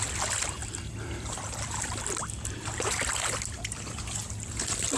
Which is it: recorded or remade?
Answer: recorded